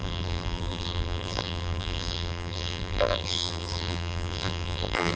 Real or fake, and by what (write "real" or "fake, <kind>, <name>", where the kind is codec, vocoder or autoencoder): fake, vocoder, BigVGAN v2